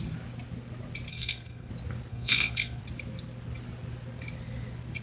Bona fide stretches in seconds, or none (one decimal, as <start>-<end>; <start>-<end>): 0.0-1.1; 1.7-2.1; 2.8-5.0

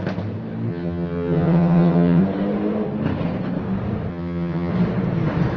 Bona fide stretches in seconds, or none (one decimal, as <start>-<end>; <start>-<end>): 0.0-0.7; 2.2-4.1; 4.7-5.6